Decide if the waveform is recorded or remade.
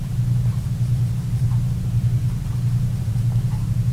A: remade